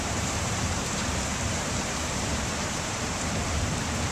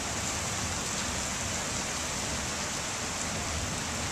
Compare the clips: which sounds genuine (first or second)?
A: second